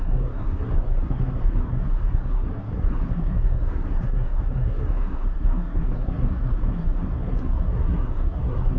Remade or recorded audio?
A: remade